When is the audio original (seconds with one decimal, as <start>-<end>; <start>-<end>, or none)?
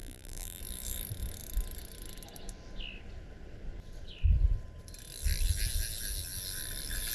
0.6-7.1